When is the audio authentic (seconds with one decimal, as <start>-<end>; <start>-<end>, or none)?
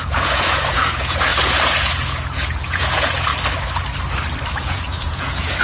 3.3-4.5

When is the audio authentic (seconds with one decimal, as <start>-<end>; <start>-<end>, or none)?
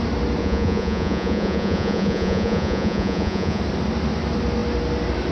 0.0-0.4; 3.6-5.3